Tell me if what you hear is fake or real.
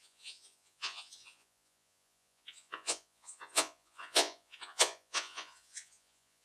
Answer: fake